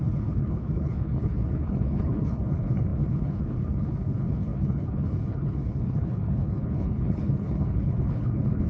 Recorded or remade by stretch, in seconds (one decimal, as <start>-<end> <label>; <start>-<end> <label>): 0.0-8.7 remade